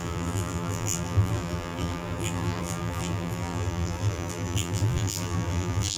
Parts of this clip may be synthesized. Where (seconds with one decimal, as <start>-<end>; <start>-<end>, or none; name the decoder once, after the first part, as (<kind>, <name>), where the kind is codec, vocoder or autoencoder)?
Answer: 0.0-6.0 (vocoder, BigVGAN v2)